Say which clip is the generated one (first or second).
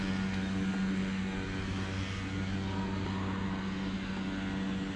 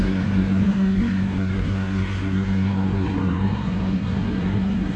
second